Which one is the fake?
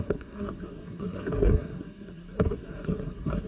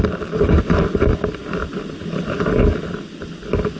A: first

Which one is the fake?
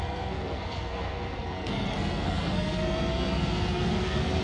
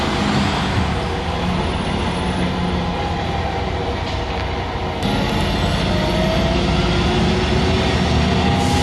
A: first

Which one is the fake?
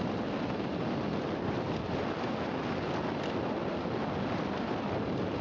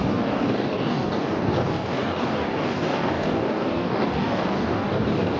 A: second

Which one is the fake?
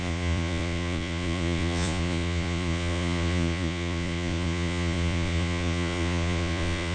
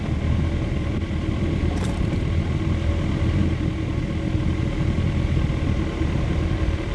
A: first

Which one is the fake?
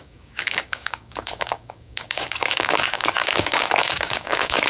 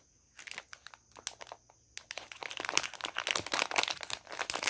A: first